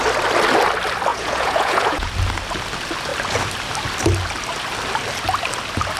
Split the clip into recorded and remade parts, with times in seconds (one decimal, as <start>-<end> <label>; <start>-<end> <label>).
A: 0.0-1.1 recorded; 1.1-2.1 remade; 2.1-6.0 recorded